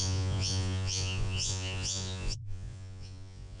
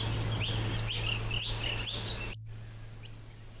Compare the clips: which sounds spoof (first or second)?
first